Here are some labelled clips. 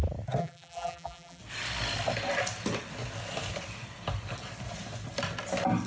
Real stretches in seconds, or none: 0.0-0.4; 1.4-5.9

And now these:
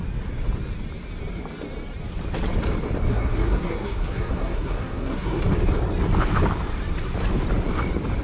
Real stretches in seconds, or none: 0.0-3.1; 5.4-8.2

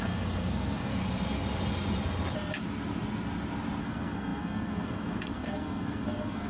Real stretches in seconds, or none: 0.9-3.8

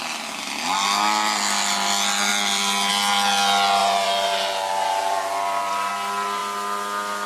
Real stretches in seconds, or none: 0.0-3.8; 5.9-7.3

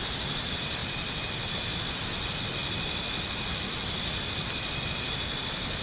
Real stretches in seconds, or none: 0.0-5.8

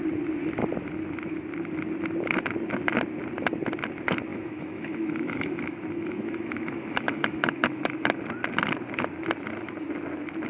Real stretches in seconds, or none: 0.0-4.3; 8.2-10.5

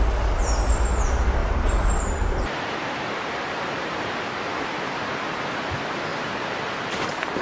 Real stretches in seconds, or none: 0.0-1.4; 5.2-6.1

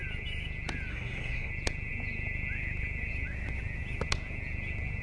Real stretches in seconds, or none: 0.0-0.9; 1.5-5.0